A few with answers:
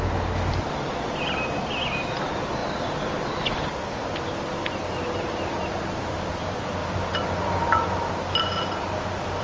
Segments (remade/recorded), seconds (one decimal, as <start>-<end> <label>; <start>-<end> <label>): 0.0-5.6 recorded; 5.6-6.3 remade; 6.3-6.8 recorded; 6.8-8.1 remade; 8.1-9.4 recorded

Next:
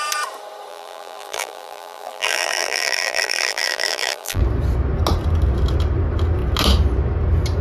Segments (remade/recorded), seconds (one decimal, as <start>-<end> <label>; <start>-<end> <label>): 0.0-0.7 recorded; 0.7-4.4 remade; 4.4-7.6 recorded

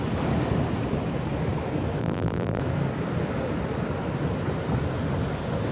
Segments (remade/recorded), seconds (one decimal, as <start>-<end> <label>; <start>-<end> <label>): 0.0-2.0 recorded; 2.0-2.6 remade; 2.6-5.7 recorded